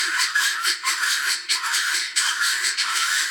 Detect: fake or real fake